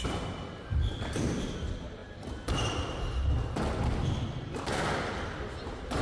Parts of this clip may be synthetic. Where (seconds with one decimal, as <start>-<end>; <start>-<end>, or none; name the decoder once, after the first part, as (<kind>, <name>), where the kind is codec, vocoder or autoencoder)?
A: none